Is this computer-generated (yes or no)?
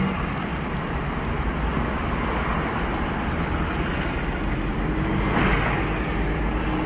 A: no